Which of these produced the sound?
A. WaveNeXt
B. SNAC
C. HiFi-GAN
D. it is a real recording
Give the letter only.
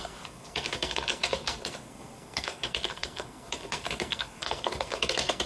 B